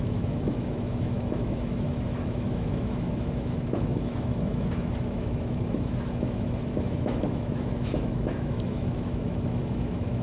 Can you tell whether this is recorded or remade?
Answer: remade